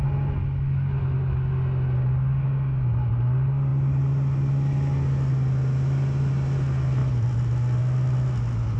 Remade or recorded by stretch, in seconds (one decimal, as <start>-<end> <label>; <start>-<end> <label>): 0.0-8.8 recorded